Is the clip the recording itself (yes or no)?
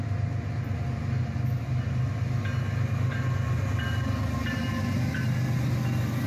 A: yes